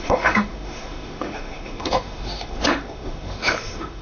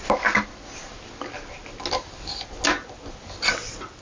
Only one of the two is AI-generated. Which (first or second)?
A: first